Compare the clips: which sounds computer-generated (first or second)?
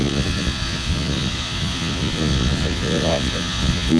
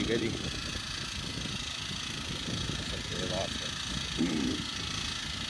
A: first